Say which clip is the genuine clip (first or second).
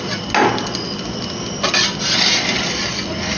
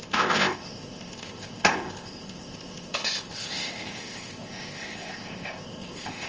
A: first